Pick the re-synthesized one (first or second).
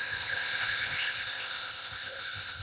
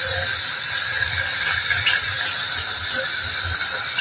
first